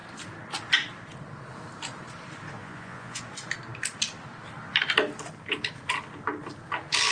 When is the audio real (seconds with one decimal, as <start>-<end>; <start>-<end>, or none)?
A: 0.0-2.6; 3.2-7.1